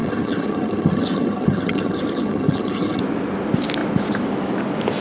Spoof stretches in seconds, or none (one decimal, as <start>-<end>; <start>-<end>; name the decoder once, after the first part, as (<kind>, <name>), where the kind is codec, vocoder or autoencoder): 0.0-3.0 (vocoder, HiFi-GAN)